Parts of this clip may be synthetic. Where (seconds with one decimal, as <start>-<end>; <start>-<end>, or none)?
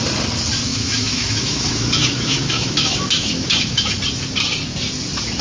0.7-3.9